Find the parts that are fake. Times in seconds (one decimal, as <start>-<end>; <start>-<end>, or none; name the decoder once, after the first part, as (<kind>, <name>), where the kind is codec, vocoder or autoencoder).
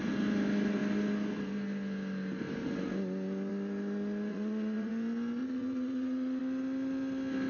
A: 4.3-4.9 (vocoder, Vocos); 5.4-6.4